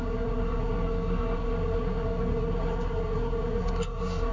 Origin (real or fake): fake